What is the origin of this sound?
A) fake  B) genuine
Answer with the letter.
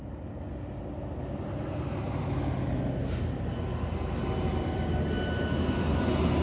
B